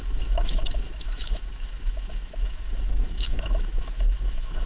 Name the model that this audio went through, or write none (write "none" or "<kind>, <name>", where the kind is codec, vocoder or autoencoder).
autoencoder, DAC-VAE